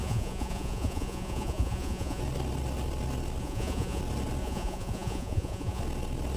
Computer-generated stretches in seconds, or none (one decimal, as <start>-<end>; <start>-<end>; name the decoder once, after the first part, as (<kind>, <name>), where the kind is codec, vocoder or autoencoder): 0.0-2.2 (vocoder, Vocos); 3.4-4.0; 4.4-5.8

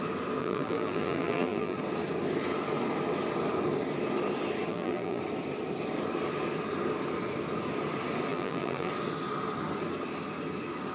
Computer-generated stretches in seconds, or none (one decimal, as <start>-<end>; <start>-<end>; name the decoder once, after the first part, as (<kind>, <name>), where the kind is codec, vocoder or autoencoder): 0.4-1.8 (vocoder, BigVGAN v2); 4.7-5.2; 8.3-8.9

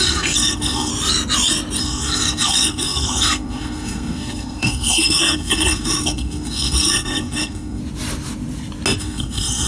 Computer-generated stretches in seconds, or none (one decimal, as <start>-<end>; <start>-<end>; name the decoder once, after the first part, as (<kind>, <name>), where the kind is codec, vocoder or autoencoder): 0.0-0.9 (codec, SNAC); 1.8-7.8; 9.0-9.7

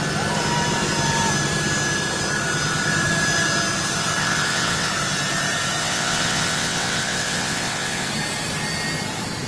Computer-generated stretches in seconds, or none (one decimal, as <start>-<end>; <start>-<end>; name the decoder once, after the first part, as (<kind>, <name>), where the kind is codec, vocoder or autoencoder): 4.2-4.9 (vocoder, WaveNeXt); 5.8-8.1